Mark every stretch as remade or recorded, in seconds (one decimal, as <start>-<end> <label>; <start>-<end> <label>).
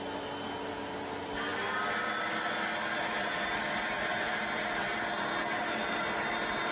0.0-6.7 recorded